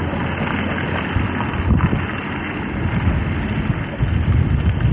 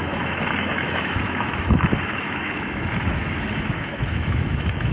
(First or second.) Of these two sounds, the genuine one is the first